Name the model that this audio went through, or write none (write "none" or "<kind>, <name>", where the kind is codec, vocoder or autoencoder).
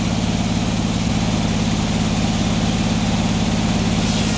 none